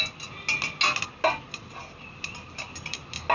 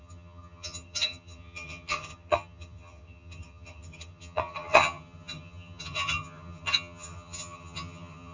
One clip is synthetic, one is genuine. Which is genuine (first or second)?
first